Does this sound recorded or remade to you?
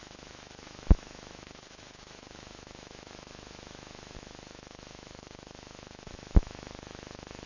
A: remade